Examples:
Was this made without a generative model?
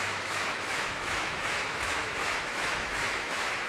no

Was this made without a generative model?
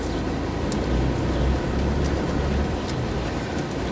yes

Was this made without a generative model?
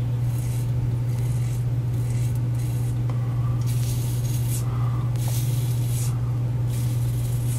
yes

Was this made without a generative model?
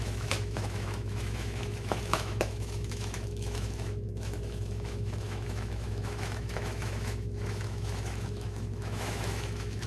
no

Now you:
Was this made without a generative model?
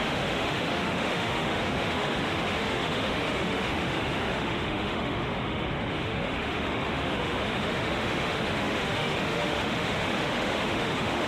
no